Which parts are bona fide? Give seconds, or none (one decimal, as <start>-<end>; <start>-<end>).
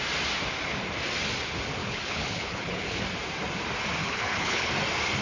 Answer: 0.0-1.8; 3.0-4.0; 4.7-5.2